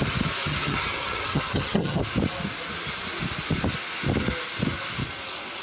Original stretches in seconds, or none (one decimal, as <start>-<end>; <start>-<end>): 0.0-0.5; 2.0-5.6